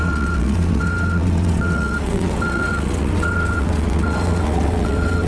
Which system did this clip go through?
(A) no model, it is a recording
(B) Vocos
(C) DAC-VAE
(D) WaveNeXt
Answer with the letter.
D